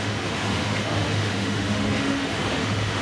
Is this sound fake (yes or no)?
yes